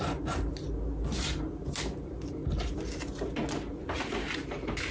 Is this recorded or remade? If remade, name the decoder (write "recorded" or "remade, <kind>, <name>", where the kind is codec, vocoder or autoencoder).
recorded